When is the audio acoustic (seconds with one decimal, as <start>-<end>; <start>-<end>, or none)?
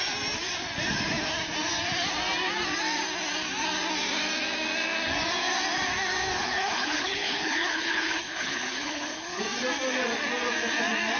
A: 0.0-6.4; 9.4-11.2